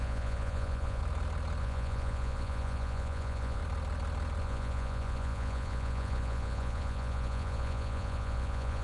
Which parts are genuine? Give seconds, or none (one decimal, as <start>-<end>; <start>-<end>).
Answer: 1.0-1.6; 3.6-4.4